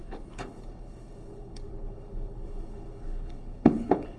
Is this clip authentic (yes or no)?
no